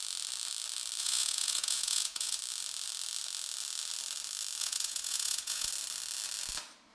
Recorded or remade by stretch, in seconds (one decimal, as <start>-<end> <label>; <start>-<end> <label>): 0.0-1.0 recorded; 1.0-2.4 remade; 2.4-4.6 recorded; 4.6-5.7 remade; 5.7-6.9 recorded